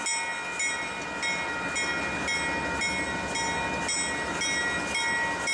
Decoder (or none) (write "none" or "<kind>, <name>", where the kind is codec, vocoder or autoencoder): none